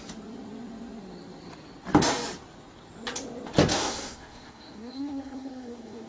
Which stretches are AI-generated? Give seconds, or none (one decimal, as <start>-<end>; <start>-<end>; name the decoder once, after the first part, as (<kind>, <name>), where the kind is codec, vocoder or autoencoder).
3.7-6.1 (codec, SNAC)